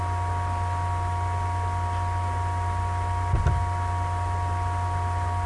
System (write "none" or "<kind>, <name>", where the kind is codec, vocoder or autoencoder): none